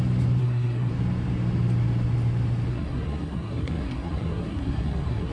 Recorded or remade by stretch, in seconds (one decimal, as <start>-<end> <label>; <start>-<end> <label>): 0.0-0.4 recorded; 0.4-0.9 remade; 0.9-2.7 recorded; 2.7-5.3 remade